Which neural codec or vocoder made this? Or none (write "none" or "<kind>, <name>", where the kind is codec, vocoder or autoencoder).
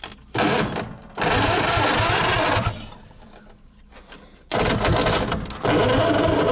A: none